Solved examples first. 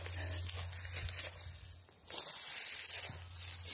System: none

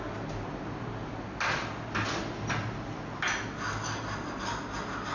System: none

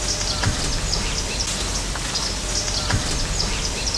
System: none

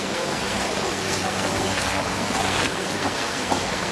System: codec, SNAC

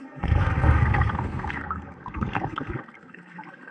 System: codec, SNAC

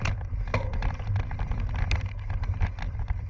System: none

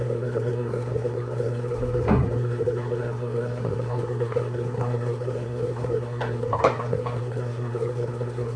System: codec, SNAC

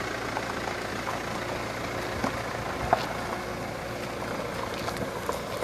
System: none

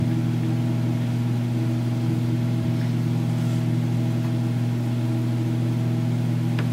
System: none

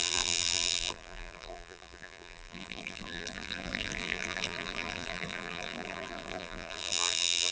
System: vocoder, BigVGAN v2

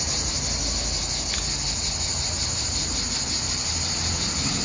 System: none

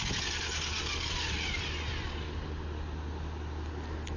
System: none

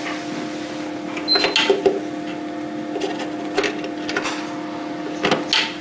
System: none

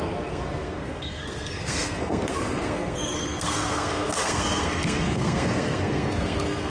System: codec, SNAC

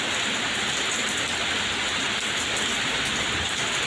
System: none